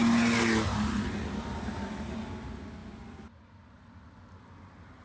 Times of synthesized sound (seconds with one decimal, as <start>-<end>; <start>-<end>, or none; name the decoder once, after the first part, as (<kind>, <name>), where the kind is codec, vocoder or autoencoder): 2.8-3.6 (vocoder, BigVGAN v2)